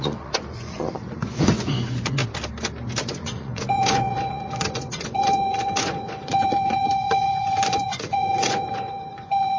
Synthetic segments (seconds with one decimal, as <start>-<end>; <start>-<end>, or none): 0.0-2.2; 3.0-9.6